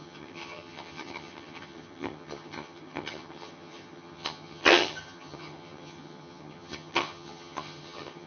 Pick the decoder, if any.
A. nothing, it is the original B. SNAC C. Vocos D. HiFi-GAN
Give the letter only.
D